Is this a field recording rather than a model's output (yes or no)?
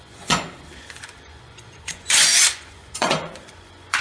no